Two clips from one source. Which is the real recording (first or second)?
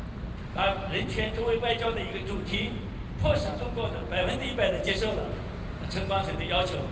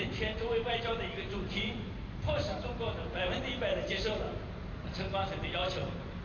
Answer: first